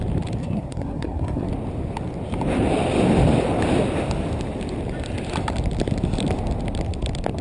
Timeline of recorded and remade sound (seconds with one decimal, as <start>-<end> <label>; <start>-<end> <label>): 0.0-0.4 recorded; 0.4-1.5 remade; 1.5-7.4 recorded